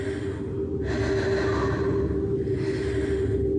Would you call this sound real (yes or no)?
yes